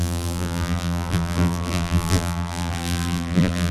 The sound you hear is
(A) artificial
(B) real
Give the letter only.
A